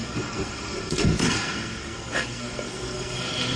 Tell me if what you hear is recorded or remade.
remade